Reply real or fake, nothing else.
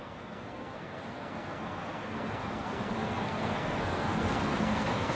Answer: fake